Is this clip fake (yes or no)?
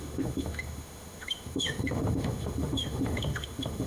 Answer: yes